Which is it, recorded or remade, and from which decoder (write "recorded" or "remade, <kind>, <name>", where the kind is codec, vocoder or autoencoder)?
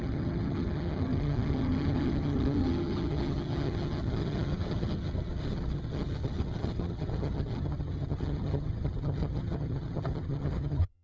remade, vocoder, HiFi-GAN